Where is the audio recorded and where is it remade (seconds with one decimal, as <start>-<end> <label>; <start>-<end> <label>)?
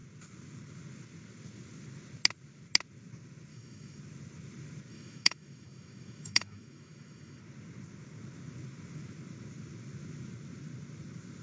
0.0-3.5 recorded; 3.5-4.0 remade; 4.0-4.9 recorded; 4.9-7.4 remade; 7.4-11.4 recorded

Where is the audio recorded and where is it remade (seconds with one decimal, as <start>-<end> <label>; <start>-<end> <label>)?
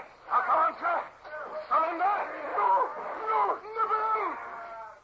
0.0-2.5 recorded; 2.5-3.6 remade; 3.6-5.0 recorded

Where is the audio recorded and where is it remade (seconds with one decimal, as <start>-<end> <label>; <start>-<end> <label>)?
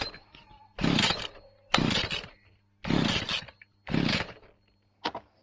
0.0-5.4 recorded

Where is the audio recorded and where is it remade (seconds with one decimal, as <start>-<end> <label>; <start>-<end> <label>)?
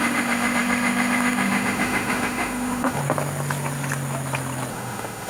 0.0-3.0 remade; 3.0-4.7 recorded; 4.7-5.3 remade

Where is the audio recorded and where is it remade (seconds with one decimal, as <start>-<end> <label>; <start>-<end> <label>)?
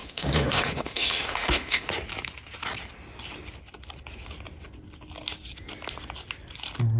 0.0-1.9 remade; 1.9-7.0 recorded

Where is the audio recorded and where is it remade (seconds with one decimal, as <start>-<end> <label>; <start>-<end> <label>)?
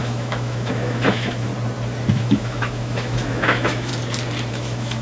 0.0-1.5 remade; 1.5-2.1 recorded; 2.1-3.9 remade; 3.9-4.5 recorded; 4.5-5.0 remade